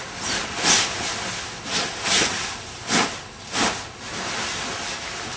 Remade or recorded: recorded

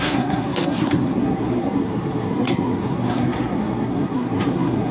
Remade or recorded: remade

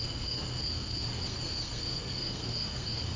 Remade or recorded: remade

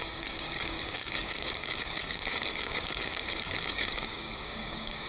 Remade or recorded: remade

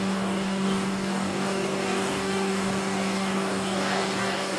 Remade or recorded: remade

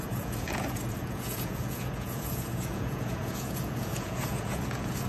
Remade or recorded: remade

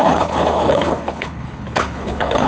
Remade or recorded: remade